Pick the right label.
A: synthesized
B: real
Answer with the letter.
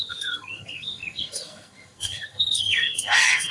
A